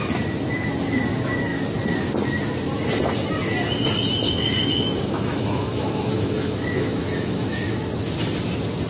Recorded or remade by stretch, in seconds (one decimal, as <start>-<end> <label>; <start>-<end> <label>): 0.0-4.1 recorded; 4.1-7.9 remade; 7.9-8.9 recorded